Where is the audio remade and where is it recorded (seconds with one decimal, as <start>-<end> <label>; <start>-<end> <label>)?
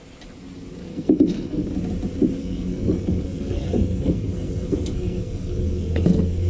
0.0-0.9 recorded; 0.9-1.7 remade; 1.7-2.4 recorded; 2.4-6.5 remade